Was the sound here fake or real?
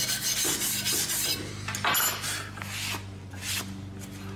real